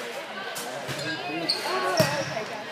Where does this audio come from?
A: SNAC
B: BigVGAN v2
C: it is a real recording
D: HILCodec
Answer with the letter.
C